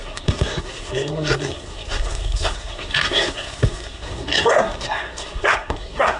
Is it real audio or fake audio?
fake